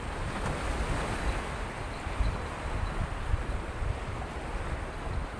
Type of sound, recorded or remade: recorded